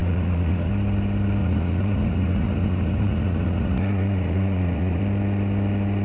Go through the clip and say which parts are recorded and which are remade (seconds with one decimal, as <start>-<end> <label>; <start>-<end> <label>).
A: 0.0-0.7 remade; 0.7-1.4 recorded; 1.4-5.0 remade; 5.0-6.0 recorded